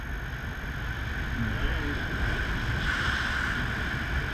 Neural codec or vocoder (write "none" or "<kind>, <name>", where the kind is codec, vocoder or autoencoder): none